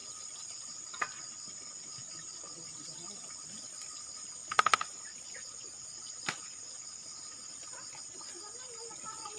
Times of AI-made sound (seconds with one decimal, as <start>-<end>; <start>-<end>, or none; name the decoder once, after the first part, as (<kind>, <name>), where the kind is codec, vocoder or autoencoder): none